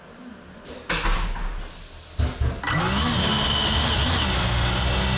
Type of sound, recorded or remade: recorded